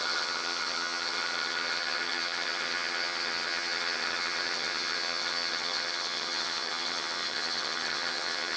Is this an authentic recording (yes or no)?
no